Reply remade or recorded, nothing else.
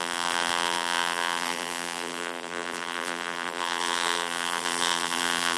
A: remade